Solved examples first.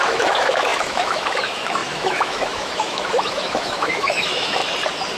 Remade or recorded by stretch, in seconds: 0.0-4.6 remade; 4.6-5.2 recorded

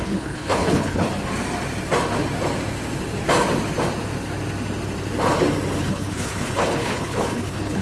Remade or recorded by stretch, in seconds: 0.0-1.1 remade; 1.1-5.8 recorded; 5.8-7.8 remade

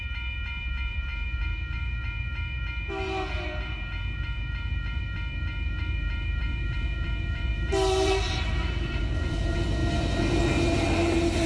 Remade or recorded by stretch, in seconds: 0.0-11.5 remade

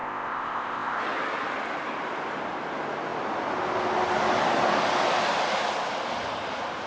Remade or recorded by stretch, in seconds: 0.0-1.0 remade; 1.0-6.9 recorded

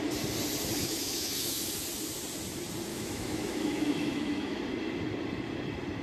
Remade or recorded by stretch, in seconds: 0.0-0.8 recorded; 0.8-1.6 remade; 1.6-2.9 recorded; 2.9-4.6 remade; 4.6-6.0 recorded